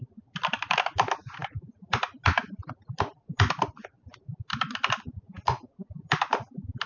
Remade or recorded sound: recorded